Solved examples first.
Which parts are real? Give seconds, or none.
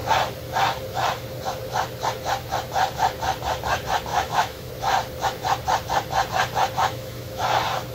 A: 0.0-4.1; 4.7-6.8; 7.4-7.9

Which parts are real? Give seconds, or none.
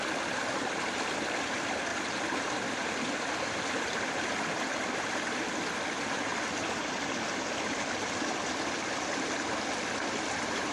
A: 0.0-1.9; 4.7-10.7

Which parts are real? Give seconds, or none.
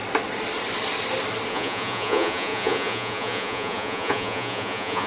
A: 0.0-1.5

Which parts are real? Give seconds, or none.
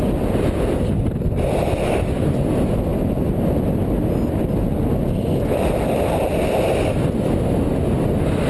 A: 0.0-8.5